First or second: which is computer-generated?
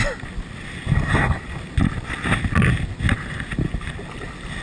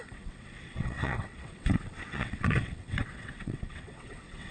second